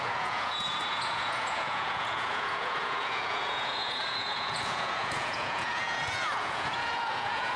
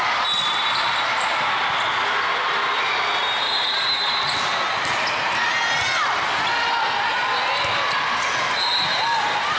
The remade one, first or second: first